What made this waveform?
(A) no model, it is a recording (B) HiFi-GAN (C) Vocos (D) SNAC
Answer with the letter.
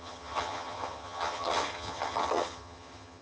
B